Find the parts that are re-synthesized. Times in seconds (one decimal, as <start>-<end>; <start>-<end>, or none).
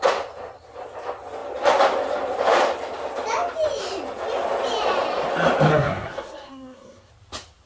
5.7-7.1